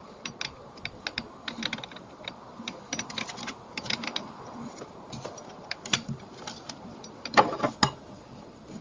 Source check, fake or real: fake